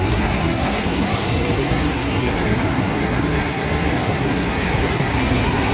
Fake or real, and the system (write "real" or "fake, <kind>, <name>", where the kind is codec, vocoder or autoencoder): fake, codec, SNAC